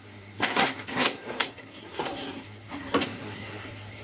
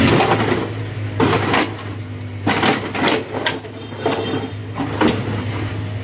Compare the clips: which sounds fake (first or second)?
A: first